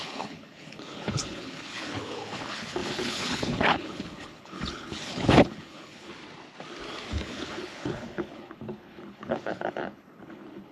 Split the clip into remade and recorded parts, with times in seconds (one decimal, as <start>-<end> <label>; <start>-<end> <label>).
0.0-6.1 remade; 6.1-7.1 recorded; 7.1-10.7 remade